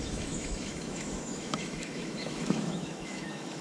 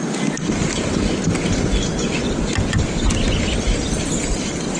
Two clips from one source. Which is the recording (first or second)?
second